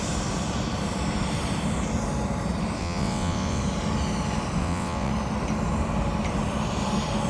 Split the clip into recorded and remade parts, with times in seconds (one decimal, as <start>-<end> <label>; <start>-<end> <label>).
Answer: 0.0-2.8 recorded; 2.8-3.6 remade; 3.6-4.6 recorded; 4.6-5.1 remade; 5.1-7.3 recorded